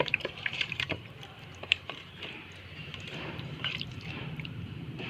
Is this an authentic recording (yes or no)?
no